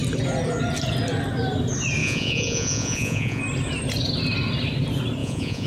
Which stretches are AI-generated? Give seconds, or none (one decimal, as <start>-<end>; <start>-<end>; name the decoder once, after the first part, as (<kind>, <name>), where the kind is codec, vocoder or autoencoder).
2.0-3.4 (vocoder, Vocos); 5.2-5.7